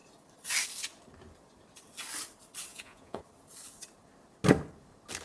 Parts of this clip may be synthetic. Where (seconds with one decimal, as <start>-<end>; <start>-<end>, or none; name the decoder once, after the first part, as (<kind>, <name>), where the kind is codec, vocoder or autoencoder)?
2.7-3.2 (vocoder, Vocos)